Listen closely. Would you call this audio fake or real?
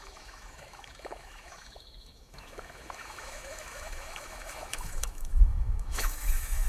fake